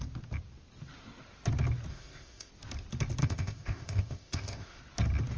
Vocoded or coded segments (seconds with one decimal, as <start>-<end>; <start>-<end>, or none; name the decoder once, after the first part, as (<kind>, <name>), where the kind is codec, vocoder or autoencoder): 1.9-2.5 (codec, ZipCodec); 3.2-4.8